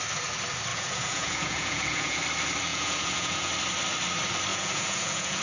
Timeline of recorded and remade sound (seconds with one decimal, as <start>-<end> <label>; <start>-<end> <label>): 0.0-0.7 recorded; 0.7-2.2 remade; 2.2-2.7 recorded; 2.7-3.5 remade; 3.5-4.5 recorded; 4.5-5.4 remade